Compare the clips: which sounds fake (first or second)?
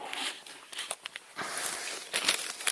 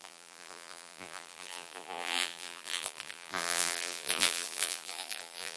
second